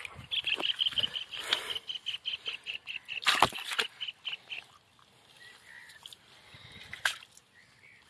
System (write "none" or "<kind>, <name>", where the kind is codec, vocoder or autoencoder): none